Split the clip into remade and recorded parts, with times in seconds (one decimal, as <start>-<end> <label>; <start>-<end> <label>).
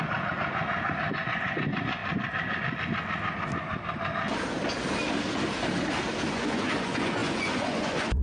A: 0.0-2.0 remade; 2.0-6.3 recorded; 6.3-8.2 remade